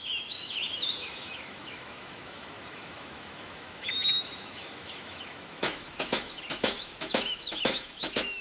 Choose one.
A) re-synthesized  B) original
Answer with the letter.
A